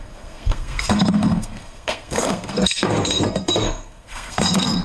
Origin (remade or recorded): remade